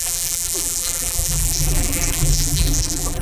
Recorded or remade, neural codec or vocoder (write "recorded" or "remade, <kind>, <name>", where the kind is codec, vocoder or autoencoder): remade, vocoder, BigVGAN v2